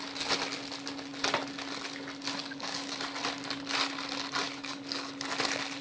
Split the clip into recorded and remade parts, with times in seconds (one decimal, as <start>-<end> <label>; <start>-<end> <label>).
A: 0.0-2.4 recorded; 2.4-3.0 remade; 3.0-4.4 recorded; 4.4-5.1 remade; 5.1-5.8 recorded